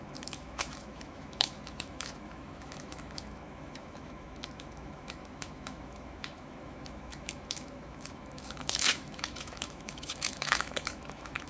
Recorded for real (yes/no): no